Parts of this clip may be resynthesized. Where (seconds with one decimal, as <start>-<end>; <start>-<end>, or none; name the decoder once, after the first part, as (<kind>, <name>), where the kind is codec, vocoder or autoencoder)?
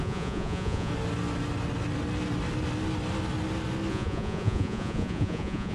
0.0-0.9 (vocoder, Vocos); 3.9-5.7